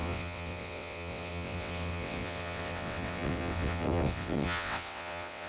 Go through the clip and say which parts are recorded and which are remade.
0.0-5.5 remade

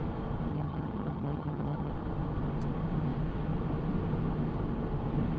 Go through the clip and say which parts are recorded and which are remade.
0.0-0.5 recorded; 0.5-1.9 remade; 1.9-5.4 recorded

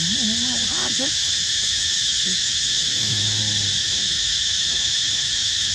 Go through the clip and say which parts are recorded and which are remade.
0.0-0.8 recorded; 0.8-3.4 remade; 3.4-3.8 recorded; 3.8-5.7 remade

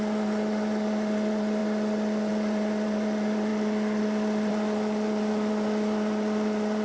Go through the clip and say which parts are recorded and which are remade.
0.0-1.6 remade; 1.6-2.3 recorded; 2.3-3.5 remade; 3.5-4.0 recorded; 4.0-6.8 remade

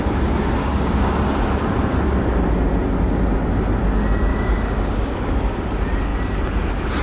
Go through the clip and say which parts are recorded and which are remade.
0.0-0.6 recorded; 0.6-1.1 remade; 1.1-4.3 recorded; 4.3-5.6 remade; 5.6-7.0 recorded

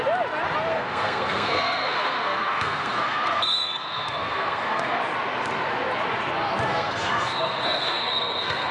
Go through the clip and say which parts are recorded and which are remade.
0.0-0.7 recorded; 0.7-5.0 remade; 5.0-6.7 recorded; 6.7-8.7 remade